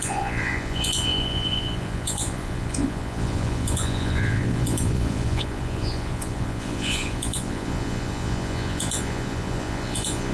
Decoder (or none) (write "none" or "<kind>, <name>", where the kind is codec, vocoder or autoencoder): vocoder, Vocos